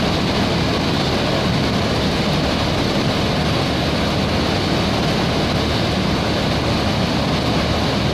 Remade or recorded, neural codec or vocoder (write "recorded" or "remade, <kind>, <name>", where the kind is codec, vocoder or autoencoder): recorded